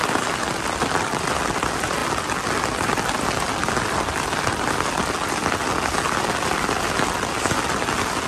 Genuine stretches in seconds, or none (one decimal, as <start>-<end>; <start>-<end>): 0.0-8.3